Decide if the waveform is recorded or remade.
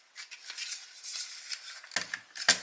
recorded